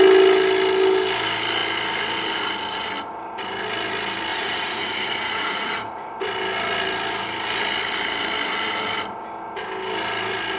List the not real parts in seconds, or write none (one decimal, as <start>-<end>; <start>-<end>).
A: 4.3-6.1